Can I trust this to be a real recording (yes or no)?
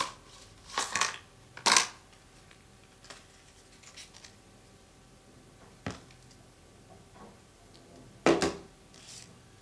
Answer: yes